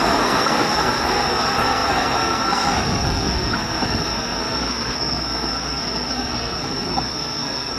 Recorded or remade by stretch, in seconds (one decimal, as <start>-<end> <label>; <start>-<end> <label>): 0.0-7.8 remade